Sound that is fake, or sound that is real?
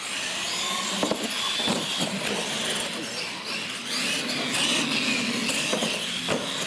real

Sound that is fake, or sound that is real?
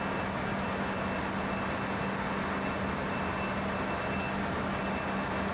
real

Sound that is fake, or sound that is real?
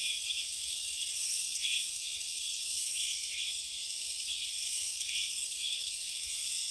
fake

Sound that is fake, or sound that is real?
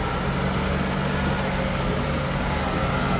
real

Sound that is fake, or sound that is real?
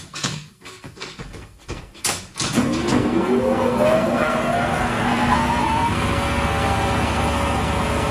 fake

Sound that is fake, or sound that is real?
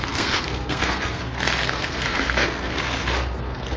fake